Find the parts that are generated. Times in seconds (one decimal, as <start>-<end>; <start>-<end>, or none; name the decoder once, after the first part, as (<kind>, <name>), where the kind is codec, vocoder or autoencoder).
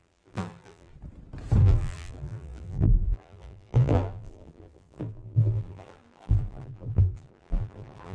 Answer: 0.0-0.9 (vocoder, BigVGAN v2); 1.6-8.1